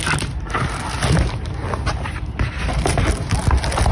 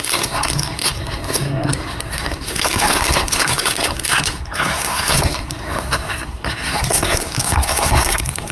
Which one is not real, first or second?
second